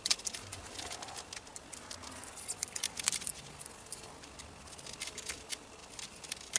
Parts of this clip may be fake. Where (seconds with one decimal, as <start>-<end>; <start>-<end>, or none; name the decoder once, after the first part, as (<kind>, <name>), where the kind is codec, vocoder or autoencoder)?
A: none